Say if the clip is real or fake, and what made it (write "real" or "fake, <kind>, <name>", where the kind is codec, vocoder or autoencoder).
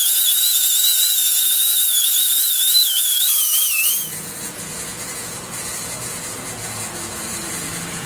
fake, vocoder, Vocos